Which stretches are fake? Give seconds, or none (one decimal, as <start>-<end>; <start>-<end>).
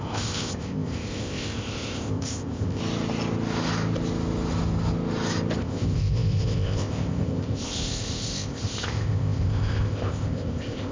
0.0-2.8; 5.6-10.9